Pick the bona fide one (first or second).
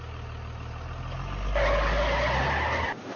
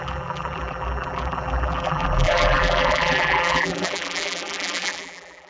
first